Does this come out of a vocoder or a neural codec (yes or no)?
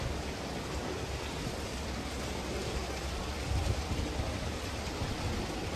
no